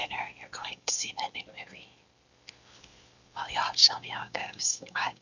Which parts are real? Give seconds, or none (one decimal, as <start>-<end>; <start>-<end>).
0.0-0.6; 1.1-3.8